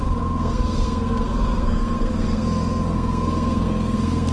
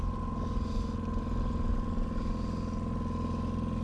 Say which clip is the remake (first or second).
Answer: first